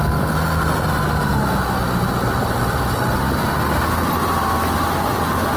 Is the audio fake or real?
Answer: real